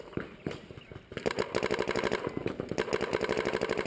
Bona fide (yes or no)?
yes